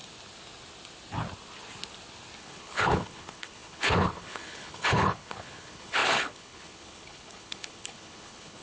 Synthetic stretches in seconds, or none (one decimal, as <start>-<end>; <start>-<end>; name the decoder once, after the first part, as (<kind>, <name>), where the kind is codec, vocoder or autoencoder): 2.4-8.6 (codec, HILCodec)